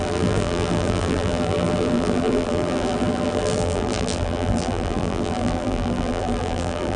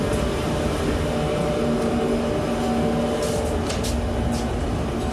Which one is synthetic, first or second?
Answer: first